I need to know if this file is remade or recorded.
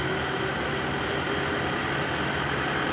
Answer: recorded